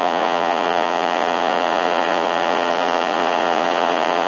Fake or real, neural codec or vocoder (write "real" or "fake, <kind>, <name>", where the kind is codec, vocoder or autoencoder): fake, vocoder, Vocos